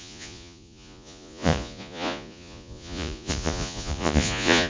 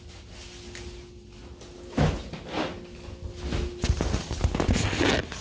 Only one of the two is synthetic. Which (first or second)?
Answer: first